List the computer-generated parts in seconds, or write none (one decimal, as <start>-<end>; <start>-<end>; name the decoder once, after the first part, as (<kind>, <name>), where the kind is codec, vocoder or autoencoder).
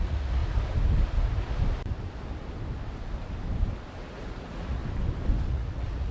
0.0-0.4 (vocoder, Vocos); 4.1-4.8; 5.5-6.1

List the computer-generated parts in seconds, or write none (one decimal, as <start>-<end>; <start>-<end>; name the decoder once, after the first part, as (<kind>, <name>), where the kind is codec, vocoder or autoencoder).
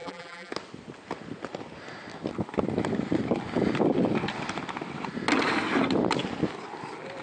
0.0-0.5 (vocoder, BigVGAN v2)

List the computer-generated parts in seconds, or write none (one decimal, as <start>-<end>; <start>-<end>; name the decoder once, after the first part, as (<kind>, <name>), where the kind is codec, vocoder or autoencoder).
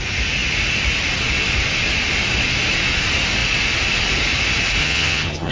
4.8-5.5 (vocoder, HiFi-GAN)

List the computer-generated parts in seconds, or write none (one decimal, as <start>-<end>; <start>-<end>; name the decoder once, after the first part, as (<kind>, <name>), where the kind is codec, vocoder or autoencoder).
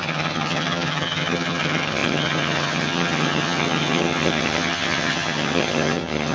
0.0-6.3 (vocoder, HiFi-GAN)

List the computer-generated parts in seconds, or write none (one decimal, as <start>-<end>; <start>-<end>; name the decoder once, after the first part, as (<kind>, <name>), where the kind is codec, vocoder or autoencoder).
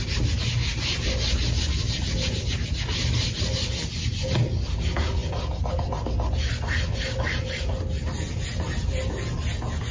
none